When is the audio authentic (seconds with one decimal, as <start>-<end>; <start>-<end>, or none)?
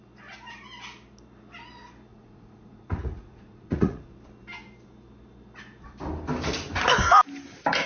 0.0-2.1; 4.0-7.9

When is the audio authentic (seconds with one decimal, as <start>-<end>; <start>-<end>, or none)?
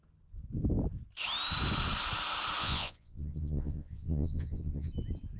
0.0-2.6; 4.9-5.4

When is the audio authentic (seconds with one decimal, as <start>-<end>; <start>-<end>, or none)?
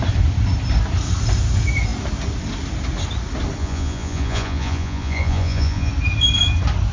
0.0-3.6; 5.9-6.9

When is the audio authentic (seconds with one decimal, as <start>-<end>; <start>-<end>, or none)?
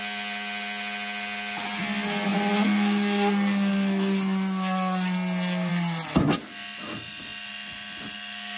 0.0-8.6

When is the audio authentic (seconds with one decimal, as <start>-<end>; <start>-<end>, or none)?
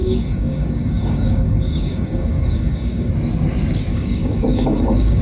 3.1-3.9